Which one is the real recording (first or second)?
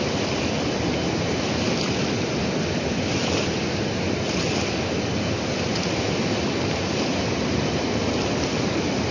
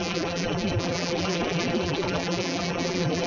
first